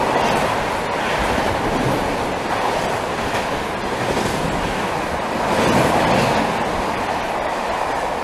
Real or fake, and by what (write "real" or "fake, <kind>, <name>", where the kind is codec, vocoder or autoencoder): real